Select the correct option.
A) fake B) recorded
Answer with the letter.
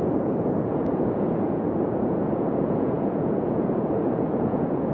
A